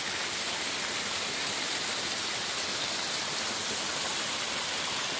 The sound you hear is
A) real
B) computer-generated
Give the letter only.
A